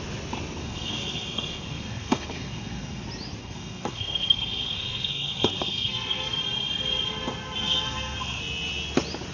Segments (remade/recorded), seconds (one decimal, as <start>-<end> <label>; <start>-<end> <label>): 0.0-0.6 recorded; 0.6-3.0 remade; 3.0-3.4 recorded; 3.4-6.4 remade; 6.4-7.6 recorded; 7.6-8.4 remade; 8.4-9.3 recorded